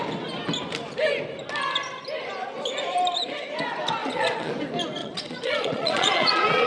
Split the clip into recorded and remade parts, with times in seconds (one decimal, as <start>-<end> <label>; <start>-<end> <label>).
0.0-4.0 recorded; 4.0-4.5 remade; 4.5-5.0 recorded; 5.0-6.7 remade